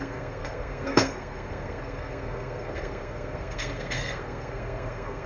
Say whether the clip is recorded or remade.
remade